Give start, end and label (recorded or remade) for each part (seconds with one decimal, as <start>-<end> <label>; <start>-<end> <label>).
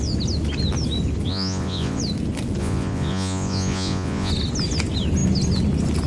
0.0-1.3 recorded; 1.3-2.0 remade; 2.0-2.6 recorded; 2.6-4.3 remade; 4.3-6.1 recorded